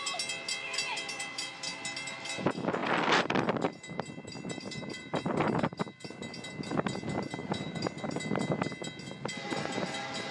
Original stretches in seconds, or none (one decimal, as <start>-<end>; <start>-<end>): 0.0-0.9; 1.5-2.8; 5.8-7.4; 8.2-10.3